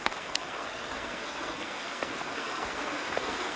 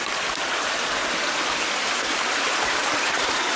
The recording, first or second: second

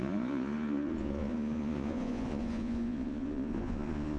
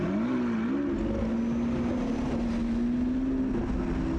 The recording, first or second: second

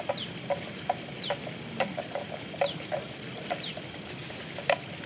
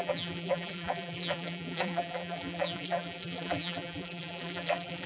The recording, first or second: first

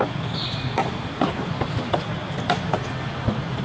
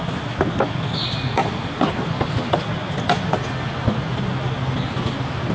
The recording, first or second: second